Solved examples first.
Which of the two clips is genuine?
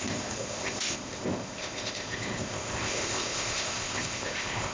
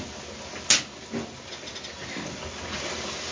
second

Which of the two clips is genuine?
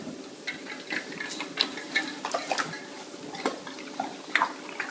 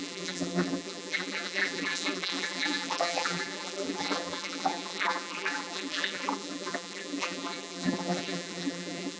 first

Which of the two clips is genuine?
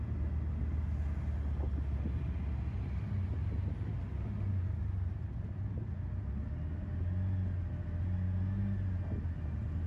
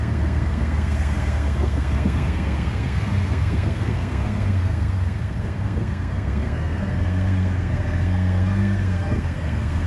first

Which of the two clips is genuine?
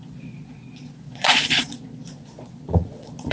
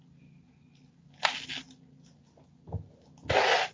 second